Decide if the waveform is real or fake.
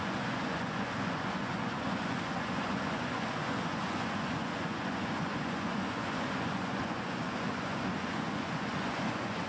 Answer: fake